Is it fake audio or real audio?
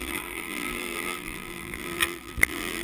fake